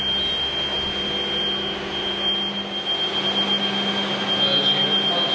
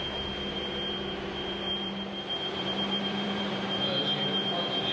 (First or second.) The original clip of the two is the first